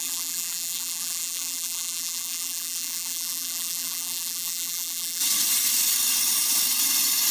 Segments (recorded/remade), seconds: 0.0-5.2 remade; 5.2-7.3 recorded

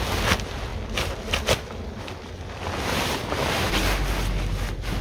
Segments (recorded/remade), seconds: 0.0-5.0 recorded

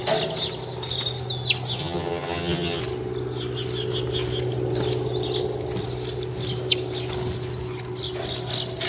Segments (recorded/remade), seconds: 0.0-1.8 recorded; 1.8-2.8 remade; 2.8-8.9 recorded

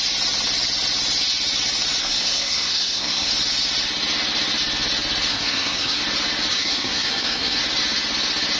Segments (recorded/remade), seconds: 0.0-2.0 recorded; 2.0-3.3 remade; 3.3-5.3 recorded; 5.3-6.0 remade; 6.0-6.5 recorded; 6.5-7.6 remade; 7.6-8.6 recorded